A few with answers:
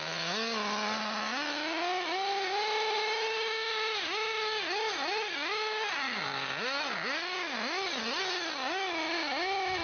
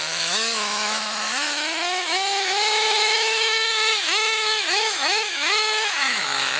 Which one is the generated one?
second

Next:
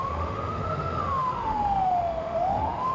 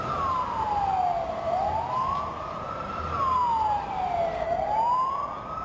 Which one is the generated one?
first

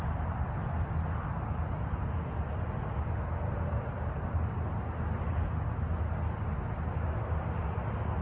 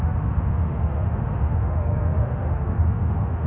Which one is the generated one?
second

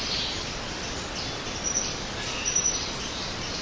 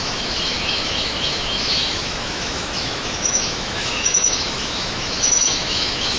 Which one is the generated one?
second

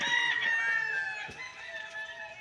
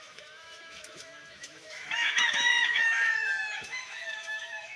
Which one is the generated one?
second